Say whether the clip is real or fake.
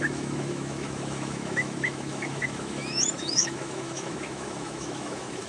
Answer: fake